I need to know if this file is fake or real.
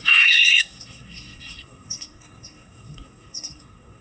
fake